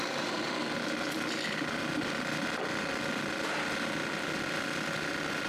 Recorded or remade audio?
recorded